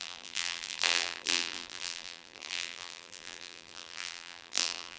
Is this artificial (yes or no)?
yes